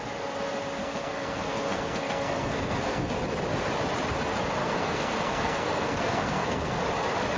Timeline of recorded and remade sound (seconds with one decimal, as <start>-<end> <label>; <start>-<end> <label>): 0.0-0.8 recorded; 0.8-3.1 remade; 3.1-4.6 recorded; 4.6-6.8 remade; 6.8-7.4 recorded